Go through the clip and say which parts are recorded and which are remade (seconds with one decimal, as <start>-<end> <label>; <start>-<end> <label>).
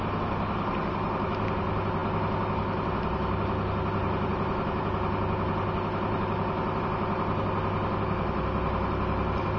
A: 0.0-9.6 recorded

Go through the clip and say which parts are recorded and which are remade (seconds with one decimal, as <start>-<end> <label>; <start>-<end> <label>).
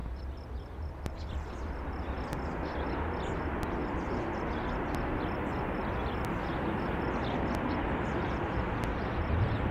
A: 0.0-1.3 remade; 1.3-8.9 recorded; 8.9-9.7 remade